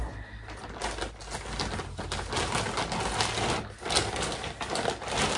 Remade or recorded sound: recorded